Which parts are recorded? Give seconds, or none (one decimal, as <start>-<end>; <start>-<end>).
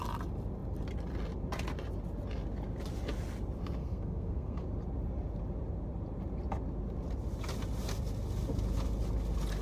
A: 0.0-3.8; 4.6-9.6